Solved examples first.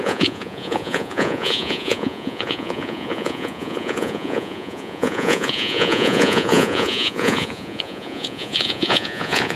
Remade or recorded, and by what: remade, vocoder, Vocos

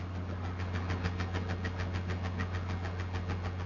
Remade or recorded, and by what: recorded